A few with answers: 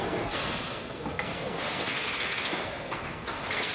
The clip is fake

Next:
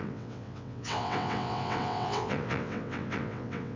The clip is fake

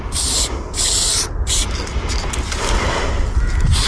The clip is real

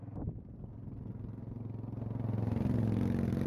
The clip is real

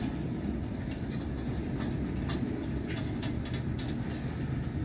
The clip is real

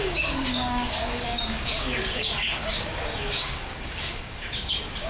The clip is fake